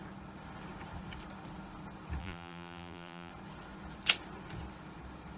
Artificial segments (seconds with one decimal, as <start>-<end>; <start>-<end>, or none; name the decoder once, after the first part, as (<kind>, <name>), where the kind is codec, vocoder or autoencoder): 2.2-3.3 (vocoder, BigVGAN v2)